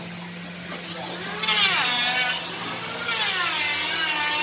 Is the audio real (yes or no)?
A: yes